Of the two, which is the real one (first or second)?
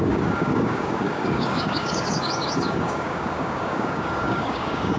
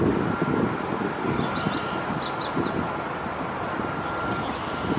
second